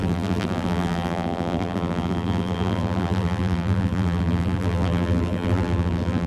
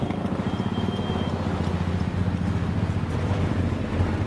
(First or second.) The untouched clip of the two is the second